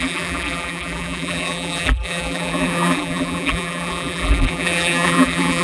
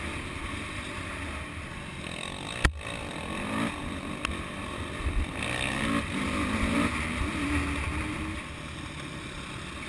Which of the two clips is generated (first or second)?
first